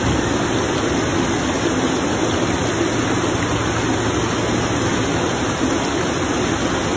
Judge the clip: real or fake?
real